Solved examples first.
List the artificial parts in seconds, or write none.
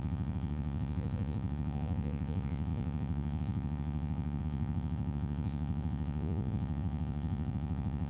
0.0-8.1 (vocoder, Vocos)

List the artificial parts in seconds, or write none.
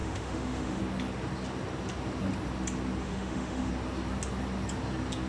0.0-0.8 (autoencoder, DAC-VAE); 3.0-3.7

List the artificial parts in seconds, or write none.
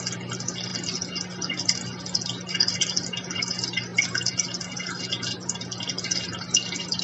none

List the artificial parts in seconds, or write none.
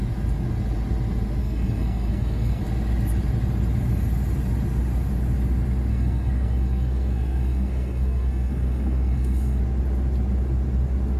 1.4-2.6 (codec, SNAC); 5.9-9.6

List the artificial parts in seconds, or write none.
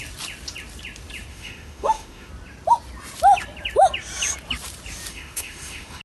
1.3-2.3 (autoencoder, DAC-VAE); 5.1-6.0